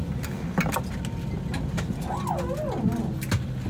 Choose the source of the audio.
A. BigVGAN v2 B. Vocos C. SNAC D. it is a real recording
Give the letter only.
D